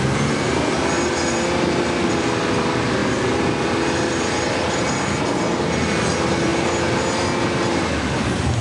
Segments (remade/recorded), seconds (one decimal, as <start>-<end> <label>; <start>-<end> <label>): 0.0-8.6 recorded